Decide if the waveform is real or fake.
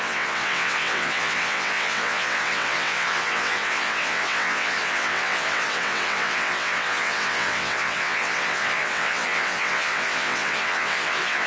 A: fake